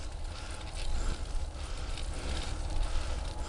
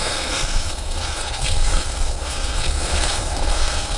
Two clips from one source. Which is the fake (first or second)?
second